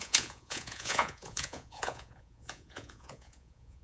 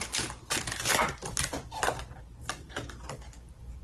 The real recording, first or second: second